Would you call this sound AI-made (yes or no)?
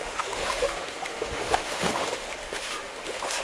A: yes